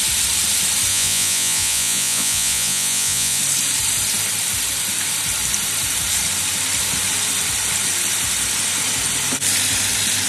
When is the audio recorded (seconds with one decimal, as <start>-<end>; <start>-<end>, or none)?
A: 0.0-0.9; 3.4-10.3